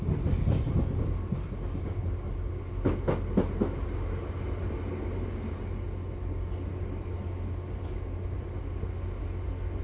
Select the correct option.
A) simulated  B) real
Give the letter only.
B